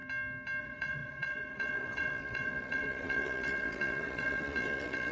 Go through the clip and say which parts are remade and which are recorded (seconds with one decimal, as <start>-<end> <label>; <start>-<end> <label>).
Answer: 0.0-0.6 recorded; 0.6-5.1 remade